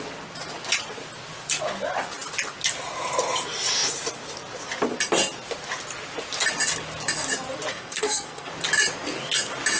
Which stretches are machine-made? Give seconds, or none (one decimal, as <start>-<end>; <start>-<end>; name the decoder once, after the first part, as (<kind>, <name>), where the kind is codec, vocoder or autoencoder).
7.7-8.5 (codec, SNAC)